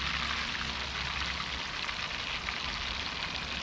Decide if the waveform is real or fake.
real